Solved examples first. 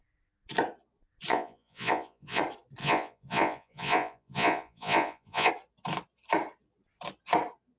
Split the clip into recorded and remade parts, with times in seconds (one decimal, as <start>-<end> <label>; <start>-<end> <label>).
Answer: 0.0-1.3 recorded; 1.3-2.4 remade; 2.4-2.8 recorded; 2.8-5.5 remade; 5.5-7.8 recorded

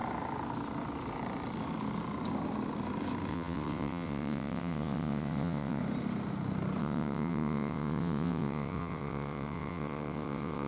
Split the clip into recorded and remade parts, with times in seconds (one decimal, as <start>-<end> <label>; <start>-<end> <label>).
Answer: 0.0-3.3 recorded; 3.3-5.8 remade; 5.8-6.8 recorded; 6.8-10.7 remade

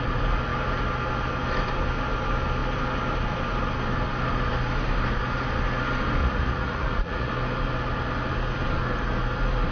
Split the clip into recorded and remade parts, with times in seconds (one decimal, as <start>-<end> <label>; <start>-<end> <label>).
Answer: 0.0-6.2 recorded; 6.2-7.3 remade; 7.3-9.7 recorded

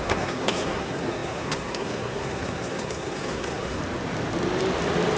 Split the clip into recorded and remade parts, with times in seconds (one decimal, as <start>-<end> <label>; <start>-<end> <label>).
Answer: 0.0-3.8 remade; 3.8-5.2 recorded

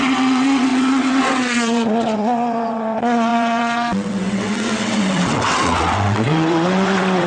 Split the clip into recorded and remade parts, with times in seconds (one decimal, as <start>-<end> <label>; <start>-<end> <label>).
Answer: 0.0-7.3 remade